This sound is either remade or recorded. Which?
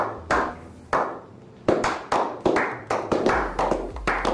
recorded